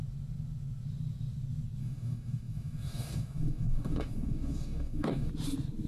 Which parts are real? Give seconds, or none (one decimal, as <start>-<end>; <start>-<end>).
0.0-1.8; 5.3-5.9